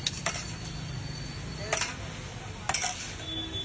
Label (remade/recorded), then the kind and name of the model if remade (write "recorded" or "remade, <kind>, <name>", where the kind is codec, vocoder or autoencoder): recorded